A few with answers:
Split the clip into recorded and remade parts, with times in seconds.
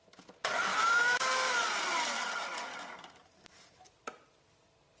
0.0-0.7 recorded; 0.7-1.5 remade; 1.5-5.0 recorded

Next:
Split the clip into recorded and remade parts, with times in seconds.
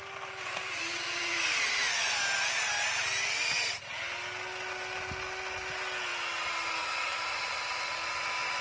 0.0-8.6 recorded